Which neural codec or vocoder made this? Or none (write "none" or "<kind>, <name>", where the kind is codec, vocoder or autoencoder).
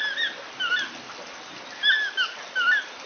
none